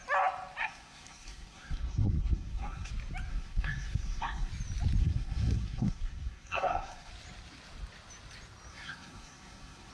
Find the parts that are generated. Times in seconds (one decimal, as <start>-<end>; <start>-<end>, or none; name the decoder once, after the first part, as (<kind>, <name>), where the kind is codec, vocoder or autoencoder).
0.6-2.9 (codec, SNAC); 3.3-4.5; 5.0-7.1; 8.7-9.9